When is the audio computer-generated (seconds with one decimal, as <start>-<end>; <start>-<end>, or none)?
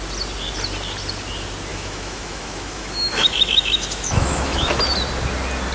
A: 1.7-4.8